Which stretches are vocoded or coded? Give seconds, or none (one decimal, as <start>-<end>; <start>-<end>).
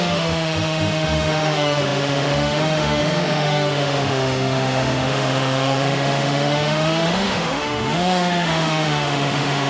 0.0-9.7